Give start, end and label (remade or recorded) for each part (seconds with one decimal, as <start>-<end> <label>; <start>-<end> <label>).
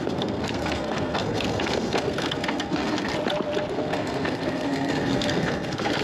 0.0-3.1 remade; 3.1-3.7 recorded; 3.7-6.0 remade